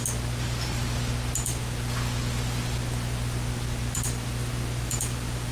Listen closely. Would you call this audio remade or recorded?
recorded